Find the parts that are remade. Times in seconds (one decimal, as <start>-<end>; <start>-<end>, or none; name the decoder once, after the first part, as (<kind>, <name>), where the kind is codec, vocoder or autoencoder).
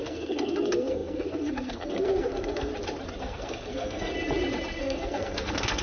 0.0-2.7 (codec, SNAC); 3.2-4.1; 4.8-5.8